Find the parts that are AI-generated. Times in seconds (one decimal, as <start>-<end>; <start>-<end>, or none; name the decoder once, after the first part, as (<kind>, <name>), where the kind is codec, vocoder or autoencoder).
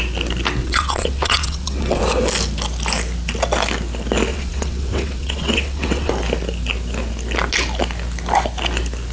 0.6-2.0 (vocoder, WaveNeXt); 4.3-6.1